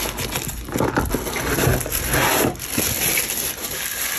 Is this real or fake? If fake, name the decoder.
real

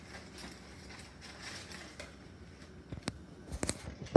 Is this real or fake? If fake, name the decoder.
real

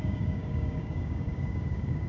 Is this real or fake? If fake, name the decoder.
fake, codec, DAC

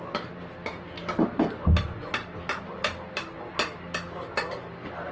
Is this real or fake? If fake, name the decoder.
real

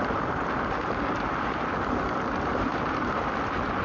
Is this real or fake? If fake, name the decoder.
real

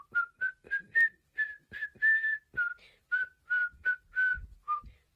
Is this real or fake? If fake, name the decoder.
real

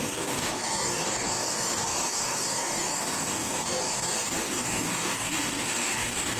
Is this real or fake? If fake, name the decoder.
fake, codec, DAC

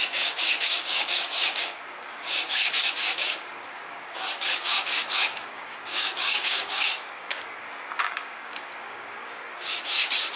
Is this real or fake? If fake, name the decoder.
fake, codec, DAC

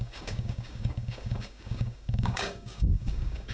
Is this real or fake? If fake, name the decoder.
fake, codec, DAC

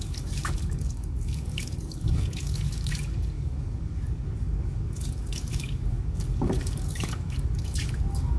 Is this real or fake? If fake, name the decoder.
fake, codec, DAC